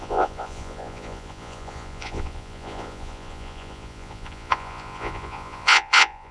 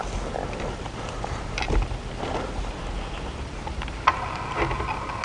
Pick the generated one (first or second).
first